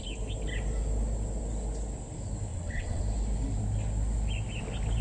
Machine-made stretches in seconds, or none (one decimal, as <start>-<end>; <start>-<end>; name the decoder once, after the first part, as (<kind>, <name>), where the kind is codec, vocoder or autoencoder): 2.5-3.0 (vocoder, WaveNeXt)